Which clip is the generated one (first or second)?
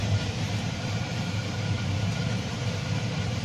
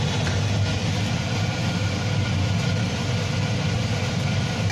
first